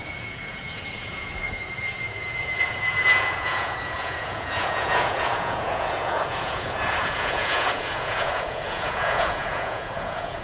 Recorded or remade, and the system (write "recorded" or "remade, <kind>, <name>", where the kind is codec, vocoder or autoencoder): remade, vocoder, Vocos